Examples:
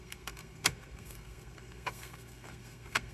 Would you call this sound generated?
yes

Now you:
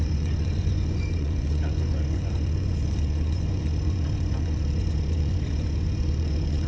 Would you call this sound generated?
yes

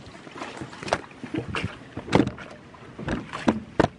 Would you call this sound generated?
no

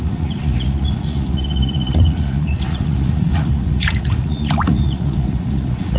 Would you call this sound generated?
yes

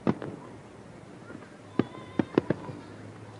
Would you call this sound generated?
no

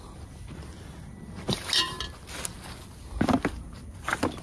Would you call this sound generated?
no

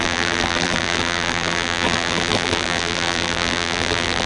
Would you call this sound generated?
yes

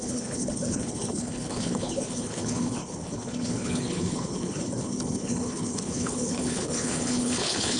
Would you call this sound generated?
yes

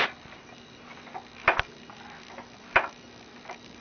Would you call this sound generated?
no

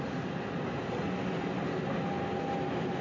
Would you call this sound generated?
no